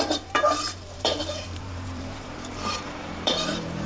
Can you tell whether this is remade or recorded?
remade